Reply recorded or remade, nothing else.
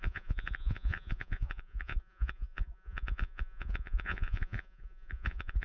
remade